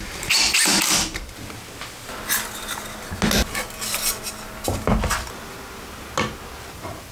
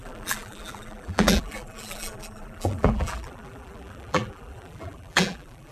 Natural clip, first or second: first